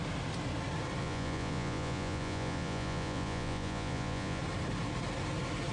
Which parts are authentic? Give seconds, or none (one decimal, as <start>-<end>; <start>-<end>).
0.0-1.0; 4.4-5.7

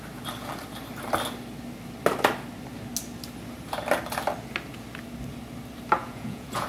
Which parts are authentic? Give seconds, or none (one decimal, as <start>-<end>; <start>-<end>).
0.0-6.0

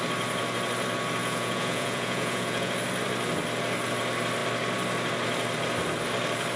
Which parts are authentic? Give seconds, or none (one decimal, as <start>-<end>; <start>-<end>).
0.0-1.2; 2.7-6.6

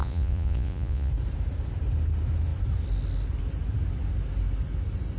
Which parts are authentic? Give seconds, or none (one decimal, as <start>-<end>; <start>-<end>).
1.1-5.2

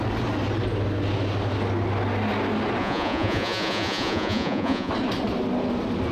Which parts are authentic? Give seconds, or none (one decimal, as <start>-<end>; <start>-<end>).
0.0-2.8; 4.9-6.1

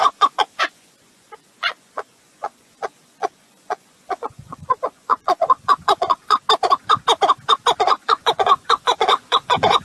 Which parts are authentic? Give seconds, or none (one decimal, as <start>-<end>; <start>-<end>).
6.4-7.8

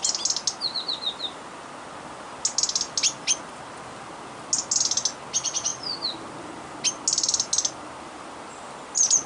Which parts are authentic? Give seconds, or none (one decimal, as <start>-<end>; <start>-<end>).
0.0-9.3

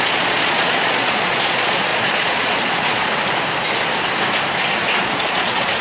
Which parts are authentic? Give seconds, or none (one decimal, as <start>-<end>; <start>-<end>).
3.1-5.0